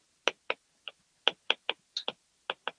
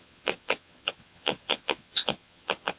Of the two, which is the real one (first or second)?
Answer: first